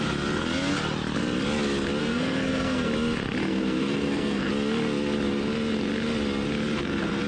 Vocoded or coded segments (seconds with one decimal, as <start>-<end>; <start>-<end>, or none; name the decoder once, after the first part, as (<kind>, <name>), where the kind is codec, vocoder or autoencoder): 2.0-2.9 (codec, SNAC); 3.4-4.5